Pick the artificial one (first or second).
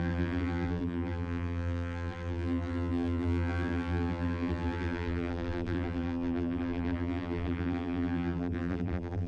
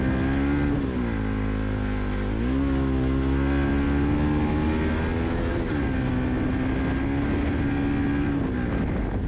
first